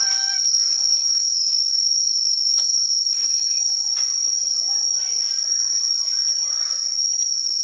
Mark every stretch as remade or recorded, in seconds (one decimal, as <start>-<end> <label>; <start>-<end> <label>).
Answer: 0.0-1.0 recorded; 1.0-3.7 remade; 3.7-7.6 recorded